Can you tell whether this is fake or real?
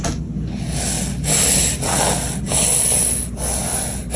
real